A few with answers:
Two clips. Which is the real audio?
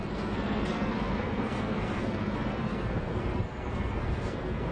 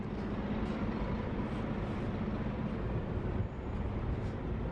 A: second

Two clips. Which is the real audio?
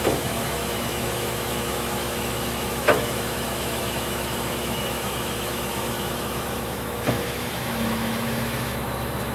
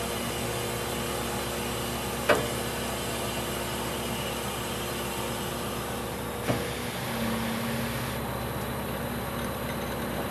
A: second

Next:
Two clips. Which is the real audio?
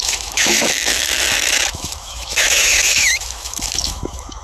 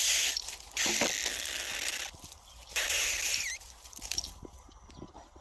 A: second